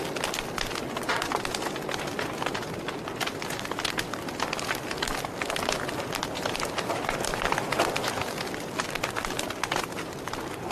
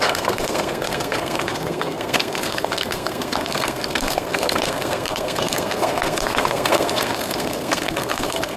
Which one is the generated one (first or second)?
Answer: second